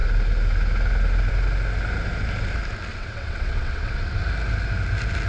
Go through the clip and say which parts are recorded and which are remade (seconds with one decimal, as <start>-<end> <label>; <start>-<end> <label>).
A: 0.0-2.9 recorded; 2.9-4.2 remade; 4.2-5.3 recorded